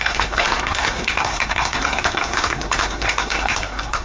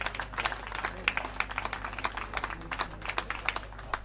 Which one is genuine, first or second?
second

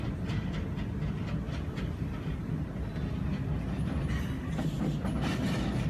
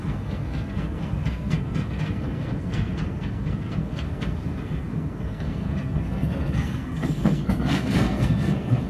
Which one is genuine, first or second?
first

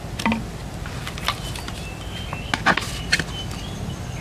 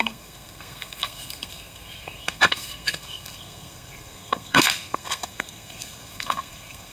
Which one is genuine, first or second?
first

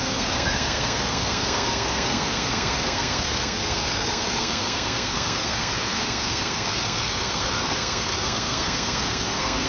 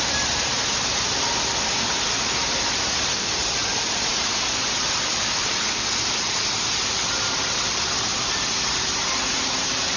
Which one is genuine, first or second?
second